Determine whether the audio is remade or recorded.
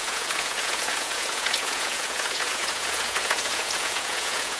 remade